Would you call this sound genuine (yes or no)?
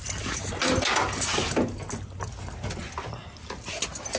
yes